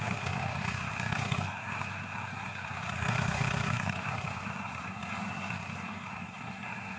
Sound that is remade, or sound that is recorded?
remade